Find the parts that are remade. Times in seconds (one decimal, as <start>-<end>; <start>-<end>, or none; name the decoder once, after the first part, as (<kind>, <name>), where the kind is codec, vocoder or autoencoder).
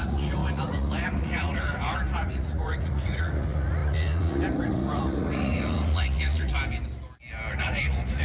0.0-6.6 (vocoder, Vocos); 7.5-8.2